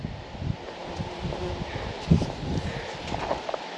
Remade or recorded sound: recorded